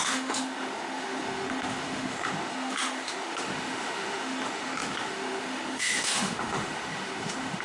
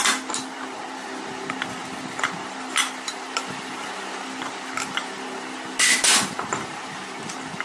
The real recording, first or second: second